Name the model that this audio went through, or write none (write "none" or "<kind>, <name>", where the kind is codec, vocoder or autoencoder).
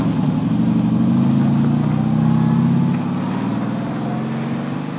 none